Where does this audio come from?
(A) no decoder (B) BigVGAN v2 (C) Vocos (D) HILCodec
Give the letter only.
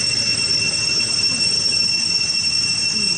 A